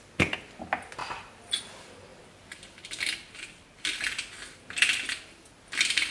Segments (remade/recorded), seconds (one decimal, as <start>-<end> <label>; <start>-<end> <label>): 0.0-6.1 recorded